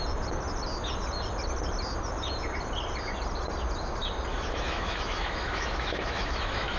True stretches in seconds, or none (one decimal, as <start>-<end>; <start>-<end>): 0.0-4.3